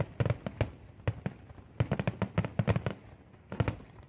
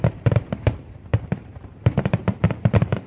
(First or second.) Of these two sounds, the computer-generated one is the second